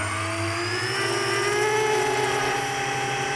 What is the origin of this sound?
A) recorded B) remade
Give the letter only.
A